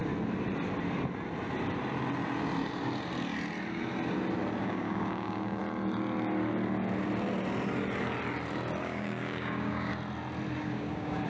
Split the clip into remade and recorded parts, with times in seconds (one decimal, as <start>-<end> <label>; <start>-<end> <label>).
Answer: 0.0-4.6 recorded; 4.6-5.6 remade; 5.6-8.8 recorded; 8.8-9.9 remade; 9.9-10.6 recorded; 10.6-11.3 remade